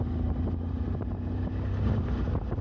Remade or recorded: recorded